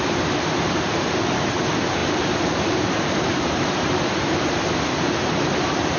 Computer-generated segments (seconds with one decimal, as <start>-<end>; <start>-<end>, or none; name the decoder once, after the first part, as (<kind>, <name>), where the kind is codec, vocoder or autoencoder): 2.0-3.9 (vocoder, BigVGAN v2)